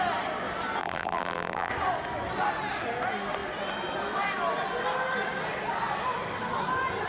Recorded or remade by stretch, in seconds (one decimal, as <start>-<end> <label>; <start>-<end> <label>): 0.0-0.8 recorded; 0.8-1.7 remade; 1.7-7.1 recorded